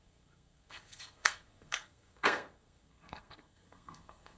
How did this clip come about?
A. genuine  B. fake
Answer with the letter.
B